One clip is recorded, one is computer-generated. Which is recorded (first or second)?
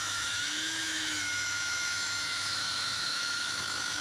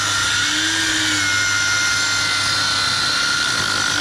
second